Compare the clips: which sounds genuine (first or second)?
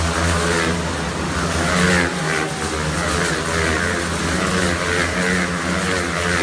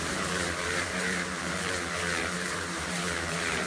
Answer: first